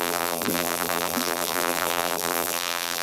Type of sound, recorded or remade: remade